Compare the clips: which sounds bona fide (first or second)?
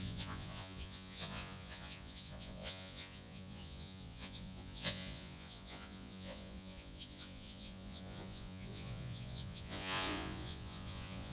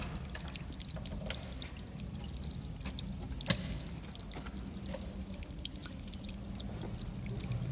second